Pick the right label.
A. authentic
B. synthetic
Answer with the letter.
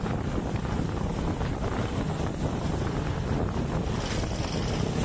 A